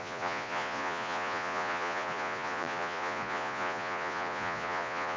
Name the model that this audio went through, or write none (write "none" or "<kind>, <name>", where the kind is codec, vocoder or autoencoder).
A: vocoder, Vocos